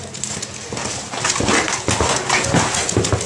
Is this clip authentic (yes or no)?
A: yes